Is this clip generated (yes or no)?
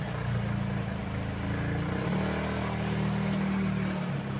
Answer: no